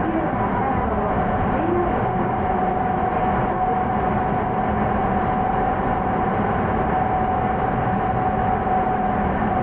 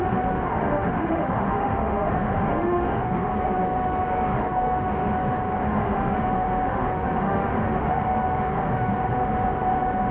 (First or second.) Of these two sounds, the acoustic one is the first